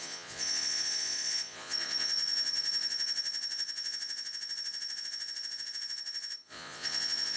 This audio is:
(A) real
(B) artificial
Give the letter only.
B